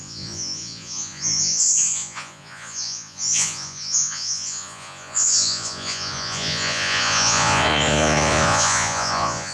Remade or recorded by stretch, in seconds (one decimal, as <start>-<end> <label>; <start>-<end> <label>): 0.0-9.5 remade